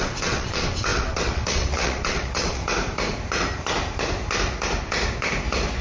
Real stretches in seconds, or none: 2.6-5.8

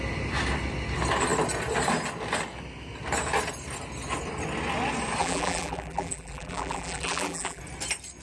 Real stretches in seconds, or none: 0.0-5.2; 7.6-8.2

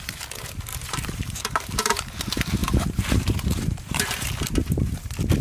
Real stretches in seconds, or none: 0.0-0.7; 2.2-2.6; 5.0-5.4

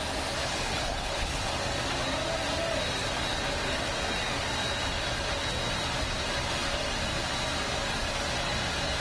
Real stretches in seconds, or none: 0.0-0.4; 1.4-9.0

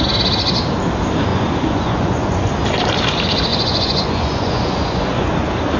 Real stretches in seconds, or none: 0.0-1.3; 2.5-3.5; 5.3-5.8

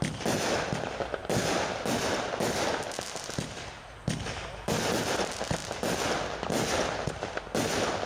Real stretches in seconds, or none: 0.0-8.1

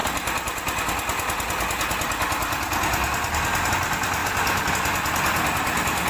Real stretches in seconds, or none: 0.0-6.1